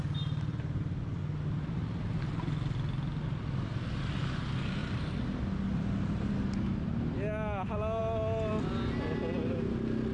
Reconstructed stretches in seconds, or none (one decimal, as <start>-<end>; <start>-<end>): none